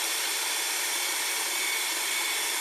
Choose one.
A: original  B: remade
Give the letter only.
B